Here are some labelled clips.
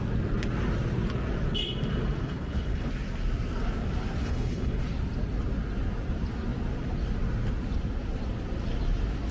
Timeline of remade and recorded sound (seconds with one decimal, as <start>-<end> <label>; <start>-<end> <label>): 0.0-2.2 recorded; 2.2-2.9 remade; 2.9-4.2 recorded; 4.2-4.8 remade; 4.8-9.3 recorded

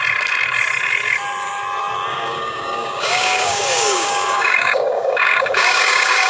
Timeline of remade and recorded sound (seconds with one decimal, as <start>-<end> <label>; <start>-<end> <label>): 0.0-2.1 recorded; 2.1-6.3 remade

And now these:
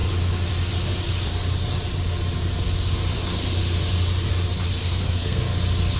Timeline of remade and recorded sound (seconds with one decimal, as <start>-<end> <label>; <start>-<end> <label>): 0.0-4.8 recorded; 4.8-5.4 remade; 5.4-6.0 recorded

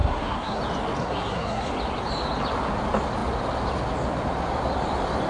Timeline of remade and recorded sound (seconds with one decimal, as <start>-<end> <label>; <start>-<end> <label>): 0.0-0.6 remade; 0.6-1.0 recorded; 1.0-1.7 remade; 1.7-5.3 recorded

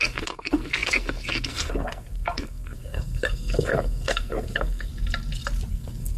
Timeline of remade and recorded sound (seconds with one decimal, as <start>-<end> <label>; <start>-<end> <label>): 0.0-4.9 remade; 4.9-5.7 recorded; 5.7-6.2 remade